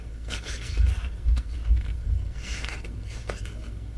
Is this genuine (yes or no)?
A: no